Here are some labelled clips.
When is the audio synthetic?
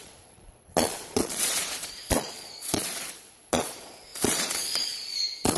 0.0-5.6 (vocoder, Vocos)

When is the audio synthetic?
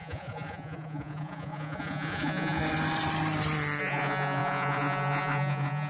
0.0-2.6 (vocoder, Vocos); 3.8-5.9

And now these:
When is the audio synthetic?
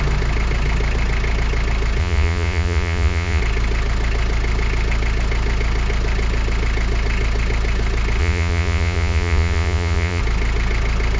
2.0-3.4 (vocoder, Vocos); 8.2-10.2